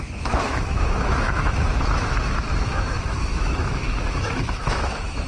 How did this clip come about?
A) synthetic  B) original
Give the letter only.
A